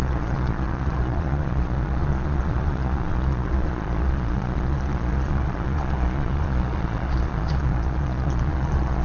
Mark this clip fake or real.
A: fake